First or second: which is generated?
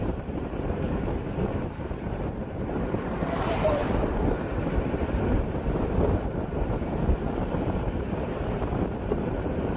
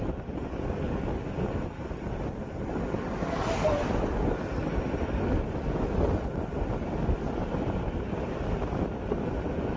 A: first